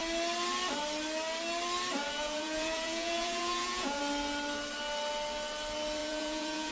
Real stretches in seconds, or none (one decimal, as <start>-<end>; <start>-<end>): 0.0-2.0; 4.0-6.0